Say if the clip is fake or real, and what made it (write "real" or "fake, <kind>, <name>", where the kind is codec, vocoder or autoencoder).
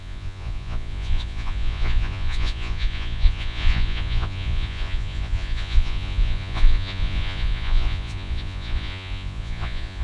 fake, vocoder, Vocos